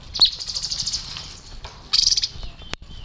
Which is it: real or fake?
fake